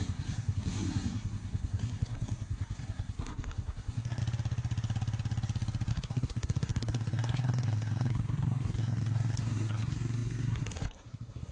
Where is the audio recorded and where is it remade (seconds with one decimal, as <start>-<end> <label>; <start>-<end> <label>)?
0.0-4.2 remade; 4.2-5.9 recorded; 5.9-11.5 remade